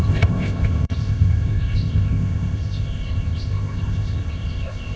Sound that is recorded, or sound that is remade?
remade